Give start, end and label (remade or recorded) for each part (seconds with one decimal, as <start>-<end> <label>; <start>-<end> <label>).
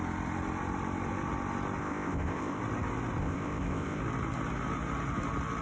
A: 0.0-1.8 recorded; 1.8-2.6 remade; 2.6-3.2 recorded; 3.2-4.0 remade; 4.0-5.6 recorded